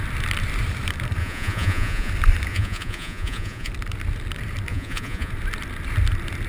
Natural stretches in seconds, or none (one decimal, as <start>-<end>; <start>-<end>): 0.0-1.2; 2.1-2.5; 3.7-4.7; 5.3-6.5